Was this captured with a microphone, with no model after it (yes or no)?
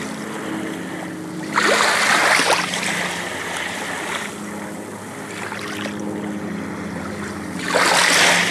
yes